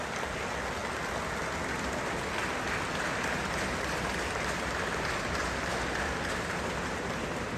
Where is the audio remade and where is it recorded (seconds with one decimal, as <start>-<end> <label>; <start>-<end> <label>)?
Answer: 0.0-7.6 recorded